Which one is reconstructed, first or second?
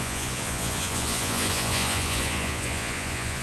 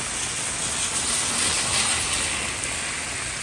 first